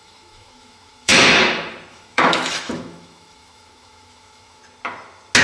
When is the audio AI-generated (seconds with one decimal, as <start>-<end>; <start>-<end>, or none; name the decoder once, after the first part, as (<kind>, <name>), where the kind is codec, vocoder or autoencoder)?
0.0-1.1 (autoencoder, DAC-VAE); 1.9-4.6